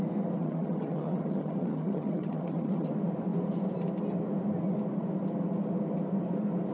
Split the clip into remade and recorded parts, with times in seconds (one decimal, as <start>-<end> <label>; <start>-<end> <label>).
0.0-0.4 recorded; 0.4-2.9 remade; 2.9-6.7 recorded